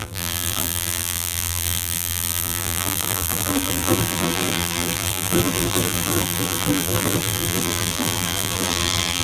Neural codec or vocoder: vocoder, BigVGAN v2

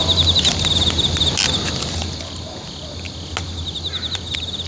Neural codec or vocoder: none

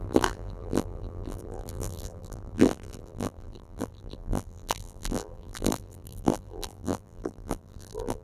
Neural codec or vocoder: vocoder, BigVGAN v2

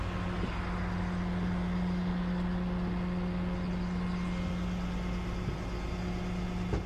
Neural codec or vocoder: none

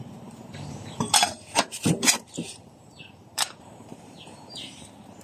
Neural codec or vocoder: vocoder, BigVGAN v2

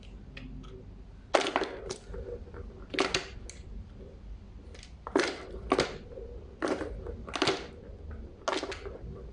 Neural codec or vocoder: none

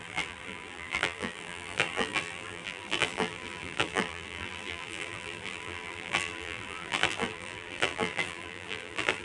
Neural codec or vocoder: vocoder, BigVGAN v2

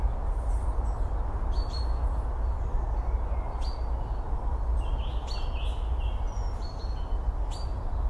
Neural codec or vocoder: none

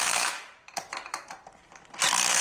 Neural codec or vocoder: vocoder, BigVGAN v2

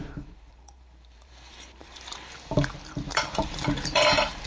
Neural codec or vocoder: vocoder, BigVGAN v2